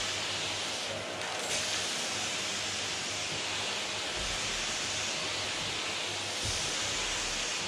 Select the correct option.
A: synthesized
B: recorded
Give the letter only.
B